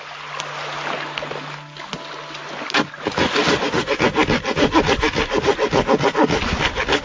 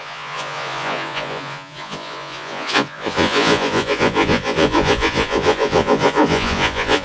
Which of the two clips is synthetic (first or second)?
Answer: second